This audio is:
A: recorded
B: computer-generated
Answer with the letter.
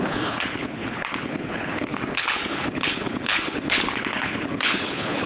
B